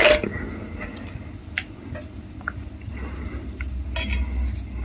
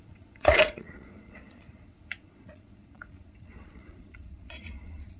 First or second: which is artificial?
second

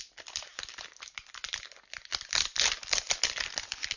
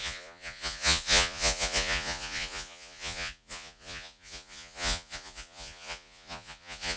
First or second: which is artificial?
second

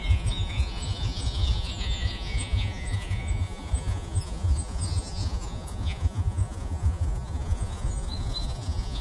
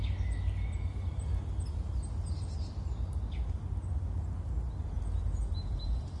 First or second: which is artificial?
first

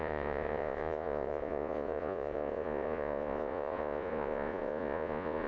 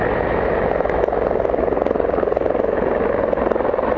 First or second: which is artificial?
first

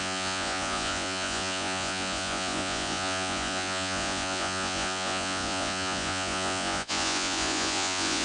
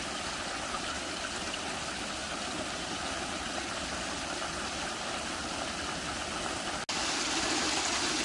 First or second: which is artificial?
first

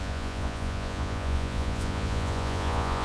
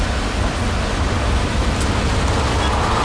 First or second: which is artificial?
first